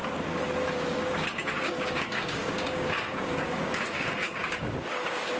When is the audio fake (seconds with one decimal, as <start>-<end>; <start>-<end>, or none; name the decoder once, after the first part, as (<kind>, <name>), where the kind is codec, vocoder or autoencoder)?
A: 0.7-5.4 (codec, DAC)